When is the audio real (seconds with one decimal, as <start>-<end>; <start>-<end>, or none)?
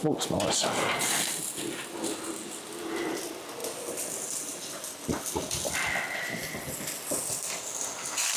0.0-8.4